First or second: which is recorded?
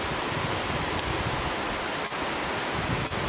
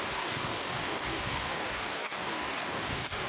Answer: first